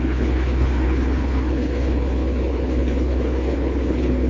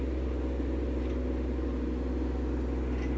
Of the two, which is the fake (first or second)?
first